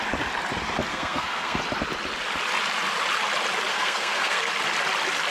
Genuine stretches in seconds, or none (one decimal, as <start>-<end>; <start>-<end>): 0.0-0.9; 1.6-3.7; 4.4-5.3

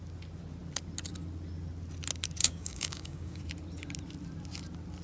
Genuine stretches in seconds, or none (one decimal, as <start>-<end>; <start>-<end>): 0.0-2.4; 3.4-5.0

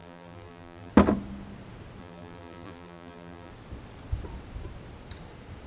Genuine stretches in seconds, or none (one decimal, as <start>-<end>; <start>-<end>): 0.9-2.0; 3.5-5.7

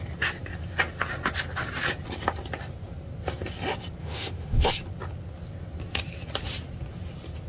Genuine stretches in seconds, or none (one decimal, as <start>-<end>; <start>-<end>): 0.0-4.0; 4.7-7.5

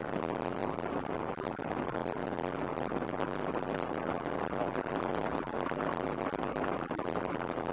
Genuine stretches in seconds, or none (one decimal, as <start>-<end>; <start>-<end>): 0.0-7.7

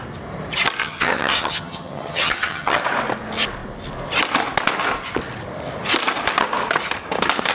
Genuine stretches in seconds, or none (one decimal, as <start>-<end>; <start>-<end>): 0.0-0.8; 2.8-7.5